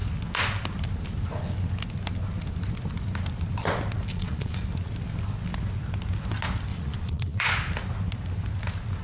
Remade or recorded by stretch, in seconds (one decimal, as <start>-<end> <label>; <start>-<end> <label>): 0.0-4.1 recorded; 4.1-4.6 remade; 4.6-6.7 recorded; 6.7-7.5 remade; 7.5-9.0 recorded